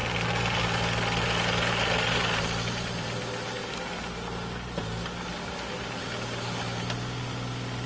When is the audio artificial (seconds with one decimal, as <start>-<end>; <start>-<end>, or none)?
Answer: none